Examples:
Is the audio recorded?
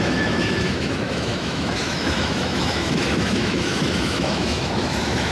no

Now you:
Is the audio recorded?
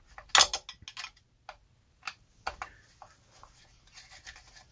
yes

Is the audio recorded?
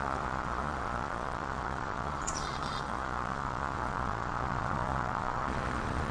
no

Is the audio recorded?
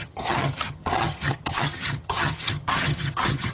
no